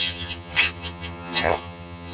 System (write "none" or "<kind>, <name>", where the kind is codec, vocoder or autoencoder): vocoder, HiFi-GAN